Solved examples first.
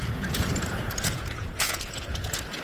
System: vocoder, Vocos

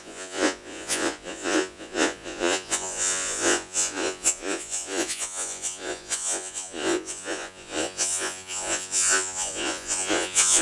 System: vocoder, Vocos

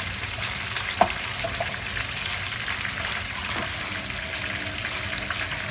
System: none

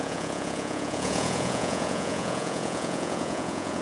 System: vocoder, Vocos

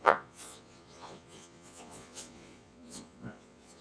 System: vocoder, Vocos